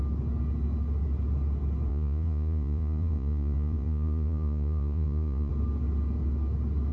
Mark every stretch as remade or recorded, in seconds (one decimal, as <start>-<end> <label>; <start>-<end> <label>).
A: 0.0-1.9 recorded; 1.9-5.5 remade; 5.5-6.9 recorded

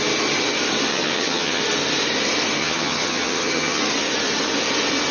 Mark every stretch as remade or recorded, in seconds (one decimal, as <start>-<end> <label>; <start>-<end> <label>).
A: 0.0-0.9 recorded; 0.9-1.6 remade; 1.6-2.6 recorded; 2.6-3.8 remade; 3.8-5.1 recorded

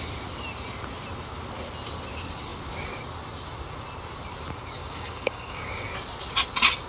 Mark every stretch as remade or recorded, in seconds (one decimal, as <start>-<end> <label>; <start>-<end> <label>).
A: 0.0-4.8 recorded; 4.8-5.9 remade; 5.9-6.9 recorded

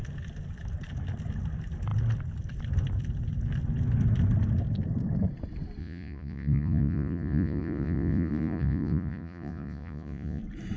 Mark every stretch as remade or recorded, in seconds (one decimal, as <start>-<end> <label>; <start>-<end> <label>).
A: 0.0-5.8 recorded; 5.8-10.4 remade; 10.4-10.8 recorded

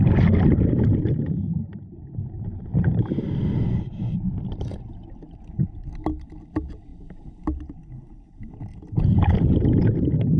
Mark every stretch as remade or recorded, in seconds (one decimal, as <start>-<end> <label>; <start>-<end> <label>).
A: 0.0-1.7 recorded; 1.7-4.4 remade; 4.4-6.9 recorded; 6.9-7.8 remade; 7.8-10.4 recorded

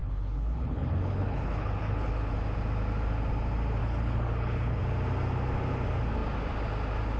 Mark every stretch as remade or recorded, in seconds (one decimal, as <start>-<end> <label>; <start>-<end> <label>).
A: 0.0-2.3 remade; 2.3-3.8 recorded; 3.8-4.8 remade; 4.8-7.2 recorded

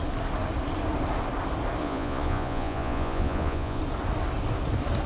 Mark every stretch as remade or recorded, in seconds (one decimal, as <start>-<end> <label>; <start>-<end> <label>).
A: 0.0-1.8 recorded; 1.8-3.8 remade; 3.8-5.1 recorded